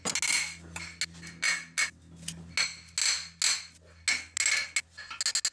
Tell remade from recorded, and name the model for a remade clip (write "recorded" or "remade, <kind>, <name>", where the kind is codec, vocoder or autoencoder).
recorded